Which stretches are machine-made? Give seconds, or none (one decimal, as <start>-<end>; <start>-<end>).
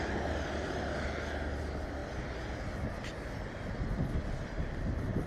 none